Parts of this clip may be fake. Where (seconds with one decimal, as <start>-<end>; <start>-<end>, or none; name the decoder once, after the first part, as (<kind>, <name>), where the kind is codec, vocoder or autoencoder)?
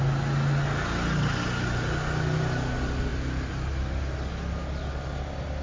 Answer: 3.1-4.0 (vocoder, BigVGAN v2)